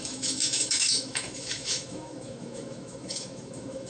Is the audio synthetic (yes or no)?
yes